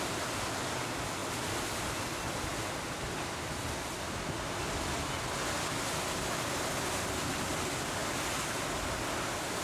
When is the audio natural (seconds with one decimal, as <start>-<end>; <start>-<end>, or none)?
0.0-9.6

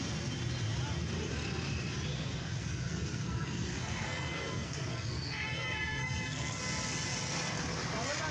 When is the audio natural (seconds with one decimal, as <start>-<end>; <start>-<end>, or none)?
0.0-2.1; 6.6-8.3

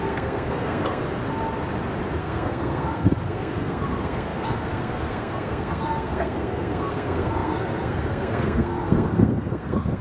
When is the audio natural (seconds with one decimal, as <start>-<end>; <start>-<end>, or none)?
1.0-2.2

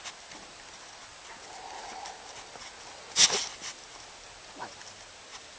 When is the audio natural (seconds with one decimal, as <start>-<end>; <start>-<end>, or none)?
0.0-5.6